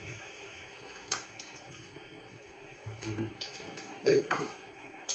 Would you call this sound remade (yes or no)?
yes